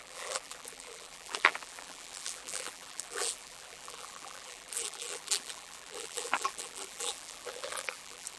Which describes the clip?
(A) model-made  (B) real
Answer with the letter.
A